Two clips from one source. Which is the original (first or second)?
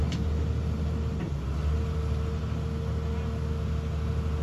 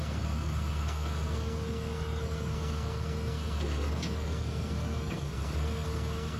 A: first